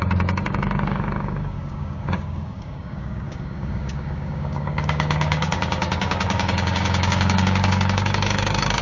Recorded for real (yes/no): no